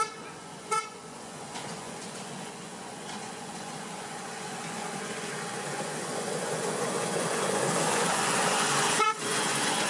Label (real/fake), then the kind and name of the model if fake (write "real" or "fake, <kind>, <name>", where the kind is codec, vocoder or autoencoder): fake, vocoder, Vocos